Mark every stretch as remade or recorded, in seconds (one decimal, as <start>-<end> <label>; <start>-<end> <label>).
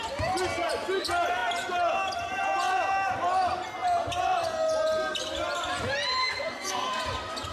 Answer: 0.0-6.2 recorded; 6.2-7.0 remade; 7.0-7.5 recorded